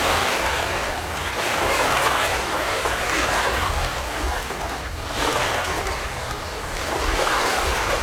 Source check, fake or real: fake